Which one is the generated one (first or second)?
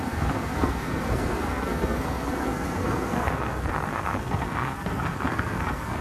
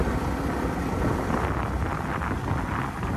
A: first